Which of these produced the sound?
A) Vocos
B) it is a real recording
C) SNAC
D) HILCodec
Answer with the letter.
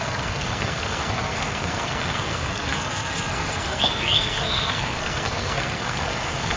C